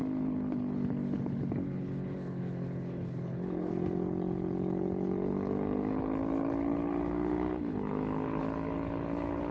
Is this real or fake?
fake